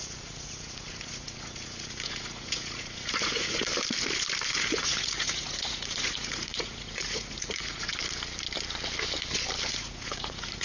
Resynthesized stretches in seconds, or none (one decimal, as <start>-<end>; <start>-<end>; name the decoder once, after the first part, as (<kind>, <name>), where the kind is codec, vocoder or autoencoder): 0.0-3.7 (vocoder, Vocos); 4.5-7.9; 9.7-10.6